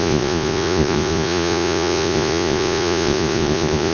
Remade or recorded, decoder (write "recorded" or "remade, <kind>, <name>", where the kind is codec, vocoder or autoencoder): remade, vocoder, Vocos